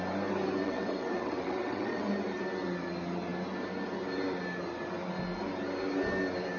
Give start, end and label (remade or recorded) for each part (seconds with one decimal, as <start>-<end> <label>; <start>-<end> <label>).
0.0-0.6 recorded; 0.6-2.0 remade; 2.0-6.6 recorded